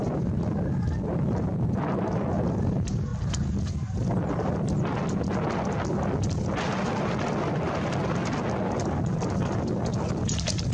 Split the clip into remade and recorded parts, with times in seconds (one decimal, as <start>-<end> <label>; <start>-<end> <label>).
0.0-10.7 recorded